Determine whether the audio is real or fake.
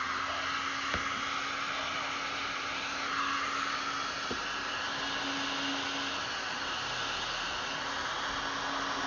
real